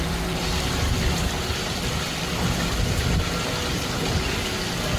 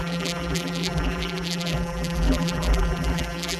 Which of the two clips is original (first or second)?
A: first